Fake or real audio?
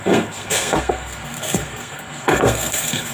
fake